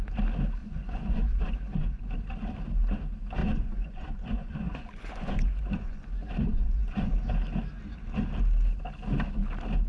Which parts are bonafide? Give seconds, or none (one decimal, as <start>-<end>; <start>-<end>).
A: 0.0-0.6; 2.0-3.4; 7.1-9.9